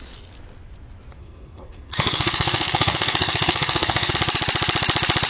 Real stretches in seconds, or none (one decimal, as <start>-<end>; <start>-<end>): 0.0-1.2; 4.1-5.3